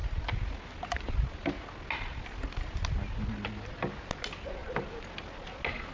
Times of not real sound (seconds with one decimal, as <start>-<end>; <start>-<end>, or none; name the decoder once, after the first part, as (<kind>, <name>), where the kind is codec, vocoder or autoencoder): none